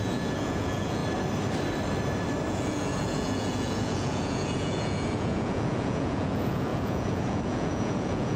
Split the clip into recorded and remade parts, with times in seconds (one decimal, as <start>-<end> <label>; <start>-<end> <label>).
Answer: 0.0-1.0 remade; 1.0-2.5 recorded; 2.5-8.4 remade

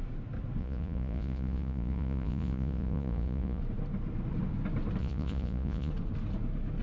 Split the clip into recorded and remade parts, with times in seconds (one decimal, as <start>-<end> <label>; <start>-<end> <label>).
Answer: 0.0-0.6 recorded; 0.6-3.6 remade; 3.6-5.0 recorded; 5.0-5.9 remade; 5.9-6.8 recorded

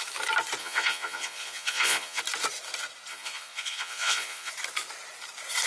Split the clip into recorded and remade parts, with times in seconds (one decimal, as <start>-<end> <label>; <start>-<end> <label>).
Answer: 0.0-0.6 recorded; 0.6-2.2 remade; 2.2-3.1 recorded; 3.1-4.5 remade; 4.5-5.7 recorded